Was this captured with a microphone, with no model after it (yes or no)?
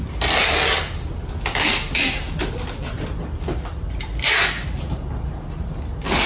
yes